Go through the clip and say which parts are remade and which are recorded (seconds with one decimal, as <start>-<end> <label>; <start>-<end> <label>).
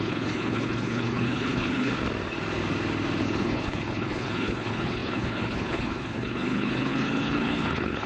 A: 0.0-1.9 remade; 1.9-3.2 recorded; 3.2-8.1 remade